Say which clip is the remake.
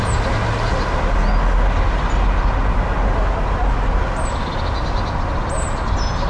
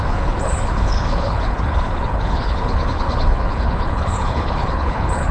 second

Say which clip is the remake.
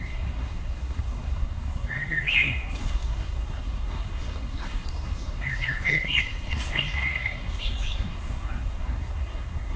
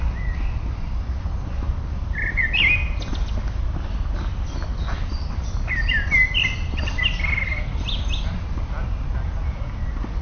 first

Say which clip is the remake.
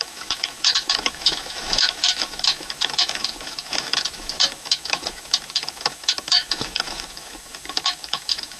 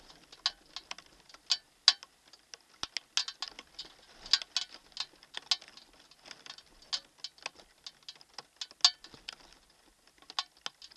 first